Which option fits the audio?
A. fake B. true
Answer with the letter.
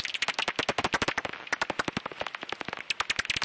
B